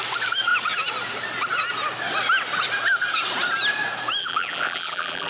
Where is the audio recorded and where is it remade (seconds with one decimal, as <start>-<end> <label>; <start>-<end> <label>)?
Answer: 0.0-4.2 recorded; 4.2-5.3 remade

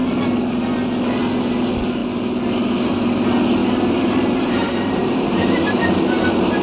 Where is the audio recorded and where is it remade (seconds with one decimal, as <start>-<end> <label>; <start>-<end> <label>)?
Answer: 0.0-3.6 recorded; 3.6-5.9 remade; 5.9-6.6 recorded

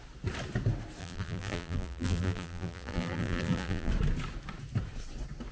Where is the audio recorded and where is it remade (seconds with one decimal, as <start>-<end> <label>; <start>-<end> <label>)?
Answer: 0.0-1.0 recorded; 1.0-3.9 remade; 3.9-5.5 recorded

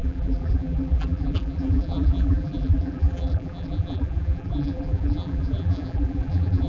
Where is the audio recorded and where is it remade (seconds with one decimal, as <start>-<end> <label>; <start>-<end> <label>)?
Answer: 0.0-6.7 remade

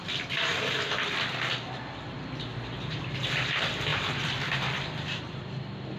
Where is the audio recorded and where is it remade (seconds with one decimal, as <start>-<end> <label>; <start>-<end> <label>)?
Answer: 0.0-2.5 recorded; 2.5-3.3 remade; 3.3-3.9 recorded; 3.9-4.8 remade; 4.8-6.0 recorded

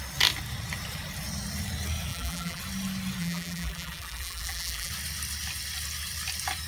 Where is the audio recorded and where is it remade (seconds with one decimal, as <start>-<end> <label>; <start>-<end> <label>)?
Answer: 0.0-2.1 recorded; 2.1-2.6 remade; 2.6-3.2 recorded; 3.2-4.9 remade; 4.9-6.7 recorded

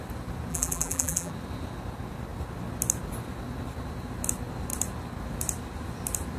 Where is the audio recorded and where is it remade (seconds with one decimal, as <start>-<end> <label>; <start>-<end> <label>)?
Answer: 0.0-0.5 recorded; 0.5-1.3 remade; 1.3-6.4 recorded

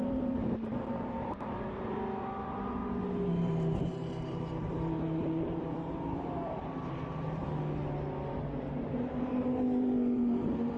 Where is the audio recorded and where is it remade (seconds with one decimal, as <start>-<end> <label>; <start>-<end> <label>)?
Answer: 0.0-2.8 remade; 2.8-3.3 recorded; 3.3-7.4 remade; 7.4-8.3 recorded; 8.3-10.8 remade